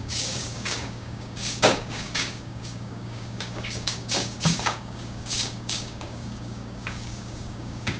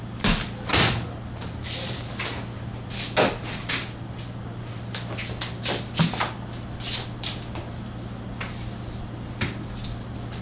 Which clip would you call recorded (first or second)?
second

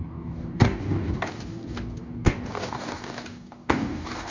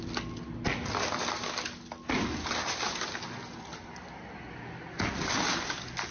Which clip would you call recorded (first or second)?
second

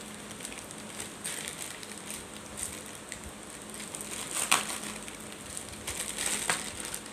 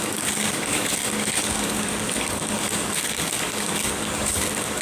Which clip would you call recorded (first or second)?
first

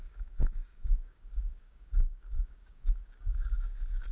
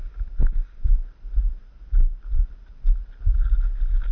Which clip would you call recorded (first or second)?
second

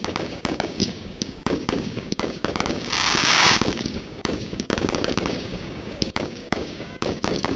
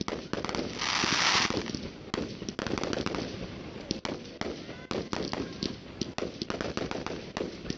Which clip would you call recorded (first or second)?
second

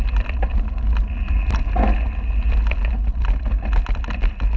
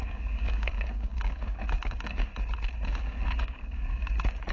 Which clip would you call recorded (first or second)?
first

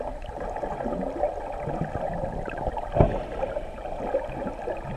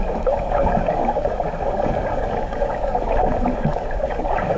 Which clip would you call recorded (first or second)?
first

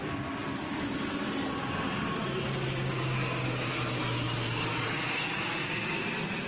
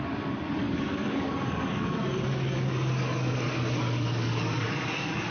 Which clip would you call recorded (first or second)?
first